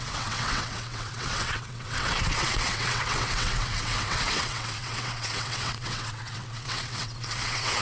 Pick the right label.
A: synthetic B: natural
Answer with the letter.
A